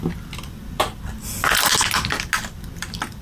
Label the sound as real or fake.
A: real